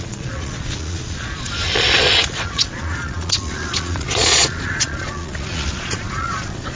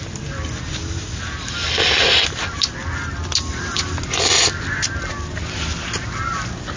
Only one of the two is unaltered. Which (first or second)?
second